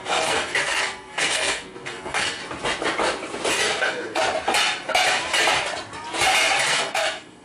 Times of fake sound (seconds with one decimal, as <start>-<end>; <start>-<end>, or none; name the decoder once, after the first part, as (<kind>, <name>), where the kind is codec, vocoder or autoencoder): 0.0-2.4 (codec, SNAC); 3.5-4.2; 6.6-7.4